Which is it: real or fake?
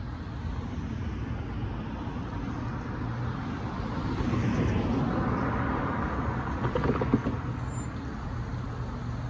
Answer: real